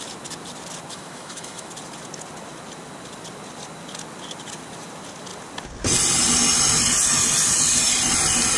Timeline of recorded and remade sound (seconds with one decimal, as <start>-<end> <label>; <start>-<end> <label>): 0.0-0.9 recorded; 0.9-1.7 remade; 1.7-8.6 recorded